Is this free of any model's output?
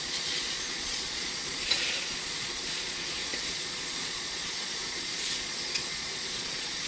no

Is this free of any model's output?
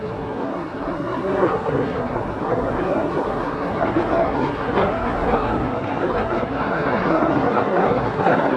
no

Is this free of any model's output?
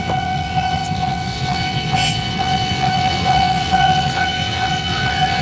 no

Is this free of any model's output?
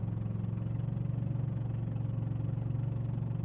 yes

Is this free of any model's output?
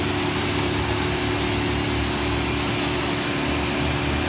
yes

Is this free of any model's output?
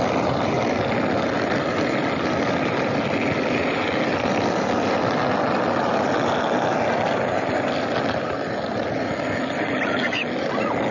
yes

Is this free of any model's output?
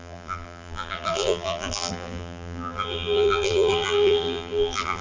no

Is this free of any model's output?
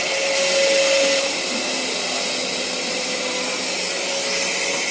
yes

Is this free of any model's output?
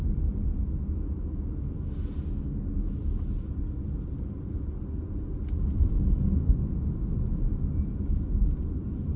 yes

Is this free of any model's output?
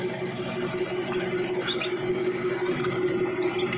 yes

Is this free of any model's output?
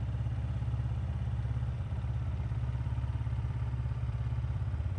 no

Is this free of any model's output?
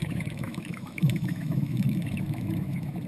no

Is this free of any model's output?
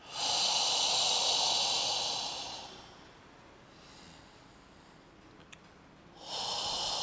yes